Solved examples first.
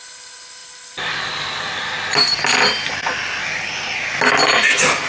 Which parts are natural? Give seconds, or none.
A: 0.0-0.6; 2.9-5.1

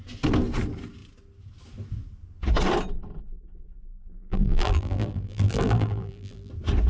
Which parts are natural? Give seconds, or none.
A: 0.0-3.9; 6.5-6.9

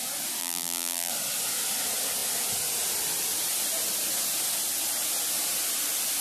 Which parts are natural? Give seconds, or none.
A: 0.0-0.4; 1.1-6.2